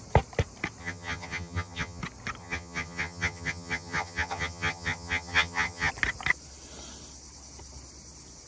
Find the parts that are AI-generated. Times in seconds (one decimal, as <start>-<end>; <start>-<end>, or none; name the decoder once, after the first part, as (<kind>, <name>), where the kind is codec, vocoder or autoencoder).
0.8-2.0 (vocoder, HiFi-GAN); 2.4-5.9